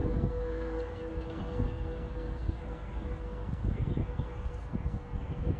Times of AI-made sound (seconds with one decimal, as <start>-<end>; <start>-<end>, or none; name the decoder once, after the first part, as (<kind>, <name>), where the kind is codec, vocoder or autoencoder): 0.0-5.6 (codec, SNAC)